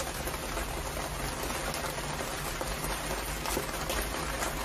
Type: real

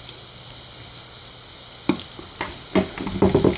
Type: real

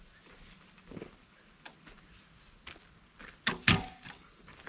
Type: real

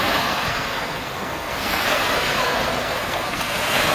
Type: fake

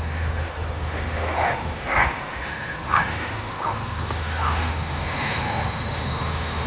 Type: fake